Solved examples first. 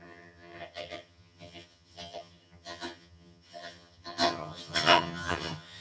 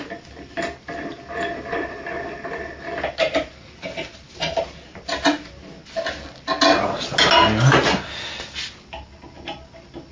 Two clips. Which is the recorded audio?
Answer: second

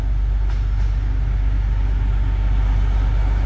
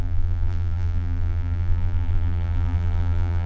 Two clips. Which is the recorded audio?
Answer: first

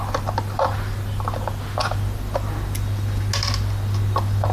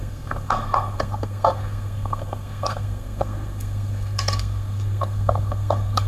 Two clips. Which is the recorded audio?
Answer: first